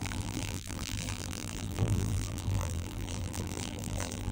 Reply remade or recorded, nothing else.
remade